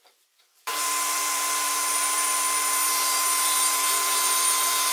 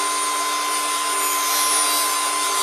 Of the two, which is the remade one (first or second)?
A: first